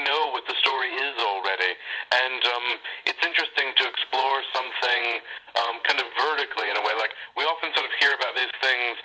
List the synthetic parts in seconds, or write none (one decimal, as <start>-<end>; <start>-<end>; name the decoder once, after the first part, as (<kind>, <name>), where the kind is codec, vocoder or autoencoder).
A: 0.0-1.2 (vocoder, Vocos); 2.7-8.4